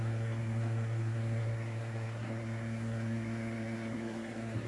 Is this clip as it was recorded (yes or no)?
no